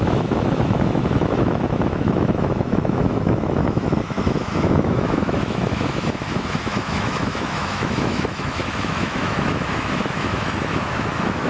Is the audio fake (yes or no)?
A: yes